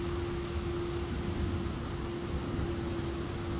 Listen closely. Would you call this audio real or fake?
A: real